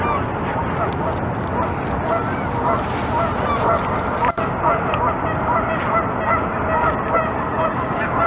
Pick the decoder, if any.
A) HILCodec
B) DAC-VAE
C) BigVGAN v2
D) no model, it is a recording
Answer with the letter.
D